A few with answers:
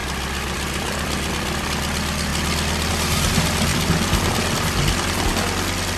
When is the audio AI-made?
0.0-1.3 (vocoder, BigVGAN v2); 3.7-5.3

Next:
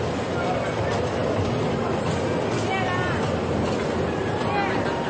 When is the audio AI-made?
none